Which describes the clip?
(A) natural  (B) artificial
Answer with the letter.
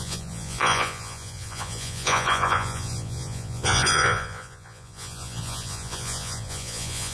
B